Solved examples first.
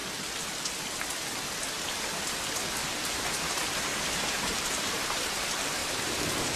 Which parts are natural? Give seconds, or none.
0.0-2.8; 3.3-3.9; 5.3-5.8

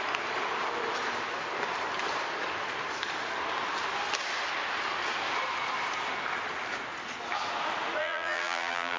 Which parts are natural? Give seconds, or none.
0.0-8.0

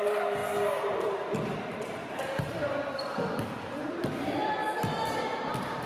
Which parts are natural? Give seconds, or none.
0.4-3.9; 4.6-5.2